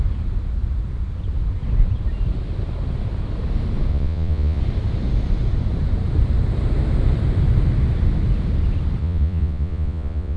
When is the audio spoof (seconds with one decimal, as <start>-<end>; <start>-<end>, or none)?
3.9-4.6; 9.0-10.4